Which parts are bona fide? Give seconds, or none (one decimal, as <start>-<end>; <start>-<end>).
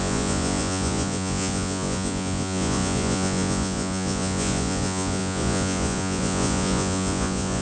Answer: none